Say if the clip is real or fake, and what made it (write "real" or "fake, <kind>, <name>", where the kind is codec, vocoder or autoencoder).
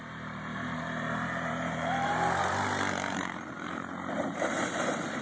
fake, vocoder, BigVGAN v2